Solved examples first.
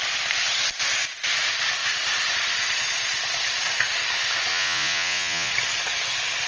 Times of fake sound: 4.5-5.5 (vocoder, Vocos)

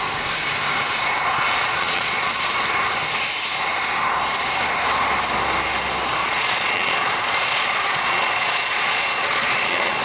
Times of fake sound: 1.6-2.5 (vocoder, Vocos); 6.2-10.0